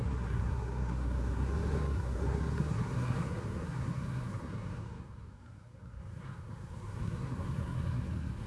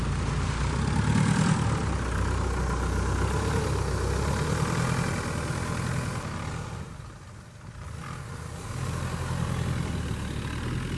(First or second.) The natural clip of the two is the second